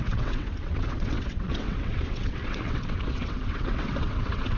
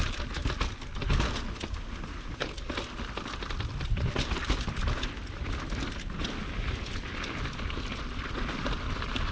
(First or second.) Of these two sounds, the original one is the second